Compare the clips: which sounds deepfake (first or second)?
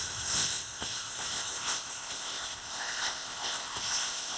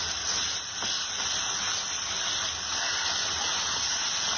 first